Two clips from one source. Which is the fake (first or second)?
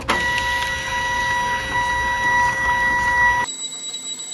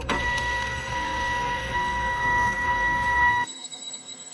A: second